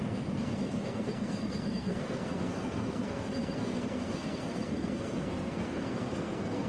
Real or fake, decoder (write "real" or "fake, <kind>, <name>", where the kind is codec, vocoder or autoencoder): fake, codec, SNAC